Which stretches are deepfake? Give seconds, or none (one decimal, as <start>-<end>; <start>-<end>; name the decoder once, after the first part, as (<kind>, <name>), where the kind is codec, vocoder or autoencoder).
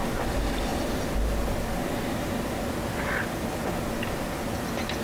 none